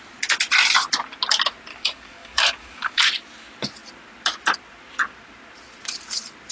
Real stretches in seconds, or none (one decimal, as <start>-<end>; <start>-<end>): 0.0-1.7; 3.0-6.5